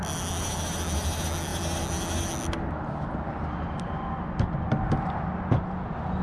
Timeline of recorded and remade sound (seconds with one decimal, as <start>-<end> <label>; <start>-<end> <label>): 0.0-6.2 recorded